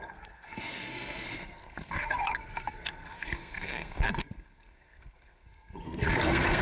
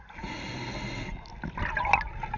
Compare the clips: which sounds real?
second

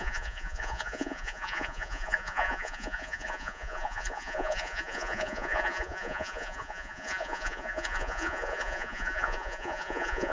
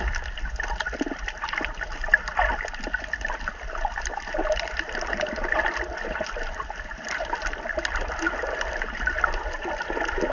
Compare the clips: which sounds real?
second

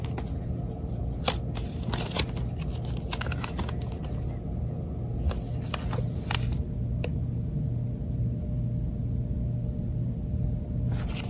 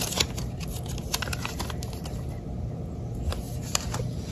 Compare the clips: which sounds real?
first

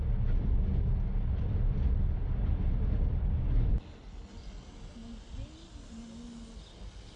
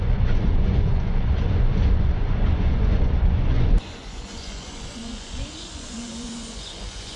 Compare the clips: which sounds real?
first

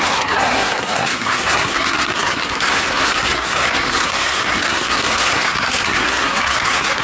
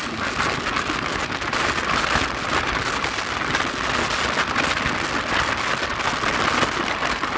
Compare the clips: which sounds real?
second